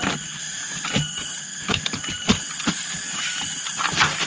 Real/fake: real